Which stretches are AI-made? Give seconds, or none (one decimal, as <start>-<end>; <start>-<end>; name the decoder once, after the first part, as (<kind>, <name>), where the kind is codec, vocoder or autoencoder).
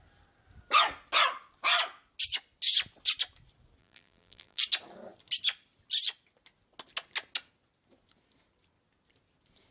3.8-4.6 (vocoder, BigVGAN v2)